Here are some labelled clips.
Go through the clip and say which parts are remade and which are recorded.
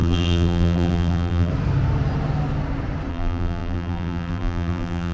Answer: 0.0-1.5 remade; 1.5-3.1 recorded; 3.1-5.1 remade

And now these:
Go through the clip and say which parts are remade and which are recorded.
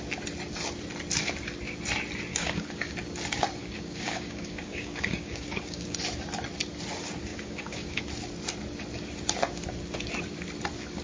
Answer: 0.0-2.3 recorded; 2.3-2.9 remade; 2.9-3.6 recorded; 3.6-6.0 remade; 6.0-7.3 recorded; 7.3-8.0 remade; 8.0-11.0 recorded